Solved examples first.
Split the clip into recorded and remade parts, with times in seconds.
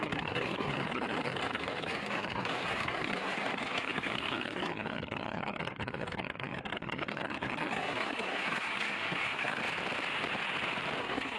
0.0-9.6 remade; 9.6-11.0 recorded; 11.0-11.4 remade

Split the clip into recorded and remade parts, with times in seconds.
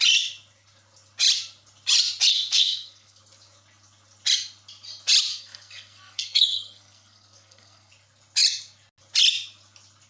0.0-2.3 recorded; 2.3-3.2 remade; 3.2-5.3 recorded; 5.3-7.9 remade; 7.9-10.1 recorded